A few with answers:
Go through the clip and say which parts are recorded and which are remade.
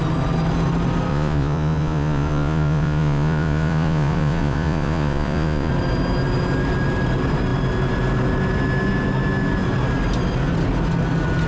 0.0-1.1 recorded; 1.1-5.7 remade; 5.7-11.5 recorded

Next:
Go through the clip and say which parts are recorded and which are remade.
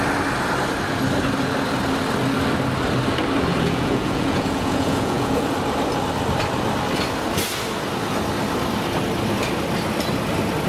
0.0-3.5 recorded; 3.5-5.5 remade; 5.5-10.7 recorded